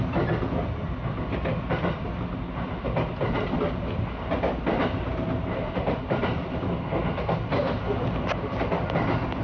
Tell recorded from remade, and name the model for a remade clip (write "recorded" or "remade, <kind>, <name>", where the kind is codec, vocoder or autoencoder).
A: recorded